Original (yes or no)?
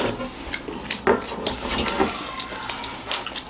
yes